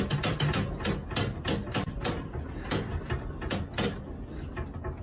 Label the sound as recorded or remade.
recorded